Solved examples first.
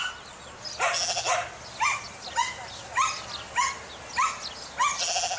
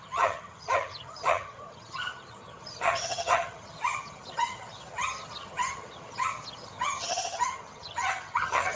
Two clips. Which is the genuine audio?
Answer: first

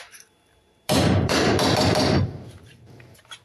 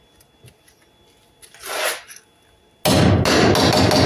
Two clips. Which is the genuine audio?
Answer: second